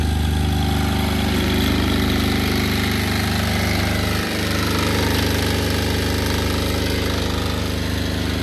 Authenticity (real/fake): real